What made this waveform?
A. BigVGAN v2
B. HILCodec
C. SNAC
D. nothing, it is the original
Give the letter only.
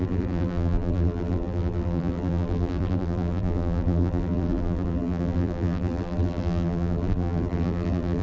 A